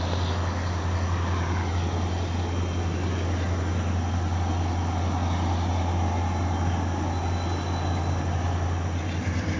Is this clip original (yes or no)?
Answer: yes